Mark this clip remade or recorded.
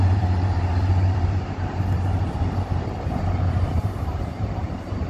remade